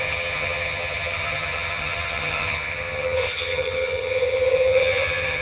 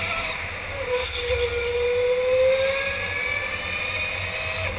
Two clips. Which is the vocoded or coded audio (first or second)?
first